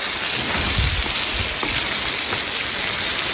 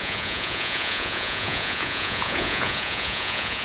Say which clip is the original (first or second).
first